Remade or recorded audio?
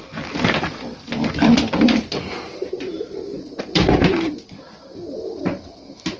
remade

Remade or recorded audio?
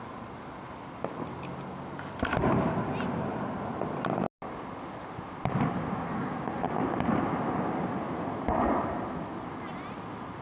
recorded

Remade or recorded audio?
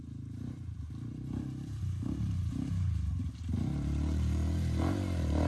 remade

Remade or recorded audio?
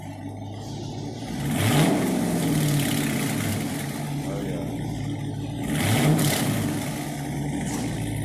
recorded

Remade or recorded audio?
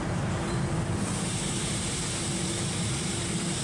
remade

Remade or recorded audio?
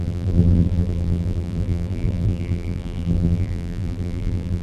remade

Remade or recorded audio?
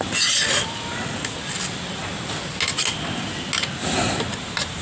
recorded